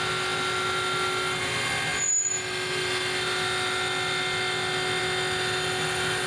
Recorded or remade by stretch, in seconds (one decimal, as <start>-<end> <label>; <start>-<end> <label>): 0.0-6.3 recorded